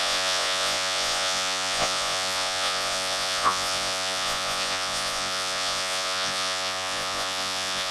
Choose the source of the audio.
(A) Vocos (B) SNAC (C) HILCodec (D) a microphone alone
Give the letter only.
A